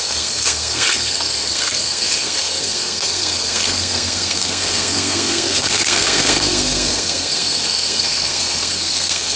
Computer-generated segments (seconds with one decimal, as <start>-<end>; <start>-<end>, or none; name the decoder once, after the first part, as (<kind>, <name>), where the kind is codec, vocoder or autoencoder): 0.0-9.4 (codec, SNAC)